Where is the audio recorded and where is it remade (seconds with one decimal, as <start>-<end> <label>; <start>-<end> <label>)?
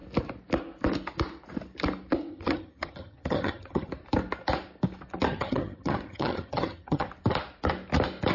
0.0-2.3 recorded; 2.3-3.9 remade; 3.9-5.3 recorded; 5.3-7.1 remade; 7.1-8.3 recorded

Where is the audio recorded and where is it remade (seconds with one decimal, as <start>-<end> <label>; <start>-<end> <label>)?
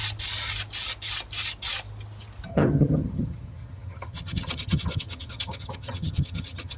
0.0-2.5 recorded; 2.5-6.8 remade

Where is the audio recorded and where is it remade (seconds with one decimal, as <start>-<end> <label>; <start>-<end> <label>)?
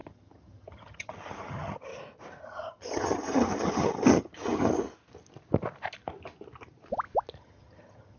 0.0-1.9 remade; 1.9-2.4 recorded; 2.4-4.8 remade; 4.8-7.4 recorded; 7.4-8.2 remade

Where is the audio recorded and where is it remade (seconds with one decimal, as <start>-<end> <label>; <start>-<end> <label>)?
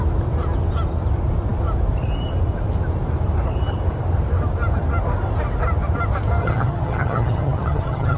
0.0-6.4 recorded; 6.4-8.2 remade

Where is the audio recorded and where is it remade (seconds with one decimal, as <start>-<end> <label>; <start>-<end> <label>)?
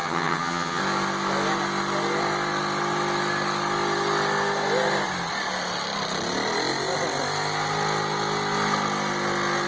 0.0-0.8 remade; 0.8-9.7 recorded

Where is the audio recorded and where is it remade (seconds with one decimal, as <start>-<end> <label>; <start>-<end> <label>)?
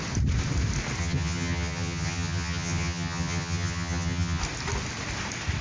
0.0-1.0 recorded; 1.0-4.4 remade; 4.4-5.6 recorded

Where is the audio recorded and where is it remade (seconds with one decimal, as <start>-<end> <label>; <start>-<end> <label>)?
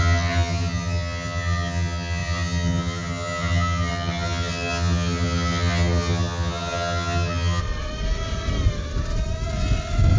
0.0-7.6 remade; 7.6-10.2 recorded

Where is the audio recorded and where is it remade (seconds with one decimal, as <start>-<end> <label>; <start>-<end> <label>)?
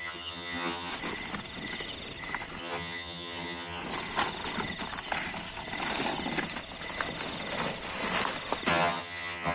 0.0-0.9 remade; 0.9-2.6 recorded; 2.6-3.8 remade; 3.8-8.7 recorded; 8.7-9.5 remade